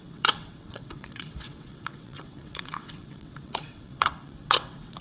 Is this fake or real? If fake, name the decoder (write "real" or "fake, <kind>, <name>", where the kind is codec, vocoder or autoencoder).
fake, vocoder, WaveNeXt